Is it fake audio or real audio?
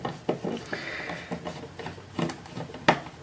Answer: real